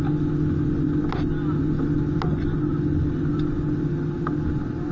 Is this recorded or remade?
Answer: recorded